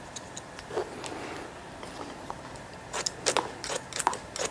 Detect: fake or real real